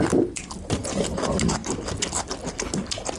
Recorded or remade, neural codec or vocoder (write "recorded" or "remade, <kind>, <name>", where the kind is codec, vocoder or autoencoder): recorded